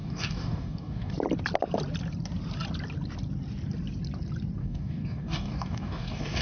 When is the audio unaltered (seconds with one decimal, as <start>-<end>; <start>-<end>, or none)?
1.1-4.6